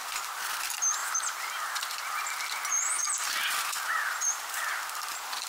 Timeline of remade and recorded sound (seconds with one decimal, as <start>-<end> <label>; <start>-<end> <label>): 0.0-1.0 recorded; 1.0-1.8 remade; 1.8-3.0 recorded; 3.0-5.1 remade; 5.1-5.5 recorded